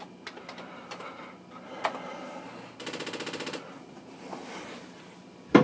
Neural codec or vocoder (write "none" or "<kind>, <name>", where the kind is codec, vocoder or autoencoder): none